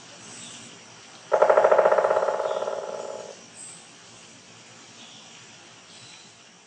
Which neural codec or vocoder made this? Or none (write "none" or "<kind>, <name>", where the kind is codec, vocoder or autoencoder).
none